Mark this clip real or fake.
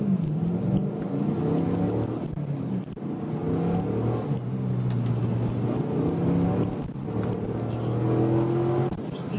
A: real